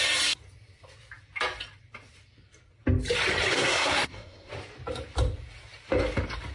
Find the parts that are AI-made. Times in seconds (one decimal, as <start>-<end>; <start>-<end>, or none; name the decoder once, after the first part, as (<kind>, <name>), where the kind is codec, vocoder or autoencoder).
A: 3.5-4.5 (codec, SNAC)